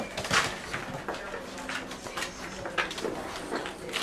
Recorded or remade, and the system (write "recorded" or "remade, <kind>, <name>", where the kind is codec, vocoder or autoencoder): recorded